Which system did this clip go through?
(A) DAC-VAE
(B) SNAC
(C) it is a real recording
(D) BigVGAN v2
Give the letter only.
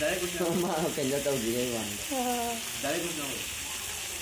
C